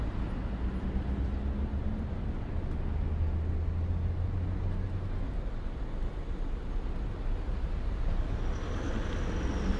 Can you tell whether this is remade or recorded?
recorded